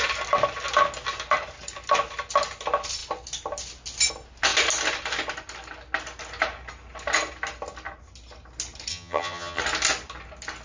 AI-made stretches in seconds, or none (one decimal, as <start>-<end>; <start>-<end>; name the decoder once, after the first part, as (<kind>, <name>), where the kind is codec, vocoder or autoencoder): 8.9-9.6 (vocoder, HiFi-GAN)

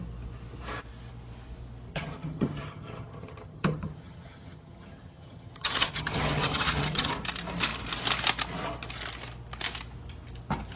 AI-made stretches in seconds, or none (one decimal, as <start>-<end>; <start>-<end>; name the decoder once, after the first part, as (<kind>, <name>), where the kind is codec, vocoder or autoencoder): 1.9-7.1 (vocoder, HiFi-GAN)

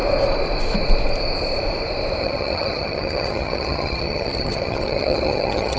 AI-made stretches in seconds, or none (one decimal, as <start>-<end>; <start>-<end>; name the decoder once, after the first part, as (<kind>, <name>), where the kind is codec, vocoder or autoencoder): 2.2-5.8 (vocoder, HiFi-GAN)

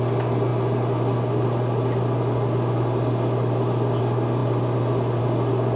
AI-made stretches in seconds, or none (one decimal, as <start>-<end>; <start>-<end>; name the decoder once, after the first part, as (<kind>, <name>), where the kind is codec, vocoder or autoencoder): none

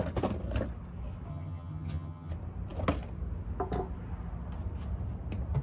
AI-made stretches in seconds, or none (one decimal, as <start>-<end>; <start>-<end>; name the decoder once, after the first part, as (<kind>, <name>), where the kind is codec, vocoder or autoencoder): 1.3-2.3 (vocoder, HiFi-GAN)

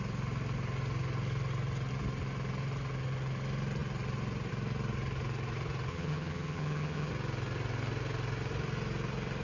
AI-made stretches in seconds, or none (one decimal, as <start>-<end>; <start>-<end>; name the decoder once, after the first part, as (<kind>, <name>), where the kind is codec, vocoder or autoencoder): 5.9-7.1 (vocoder, HiFi-GAN)